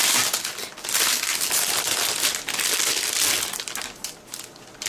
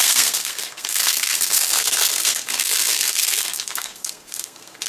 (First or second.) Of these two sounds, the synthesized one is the second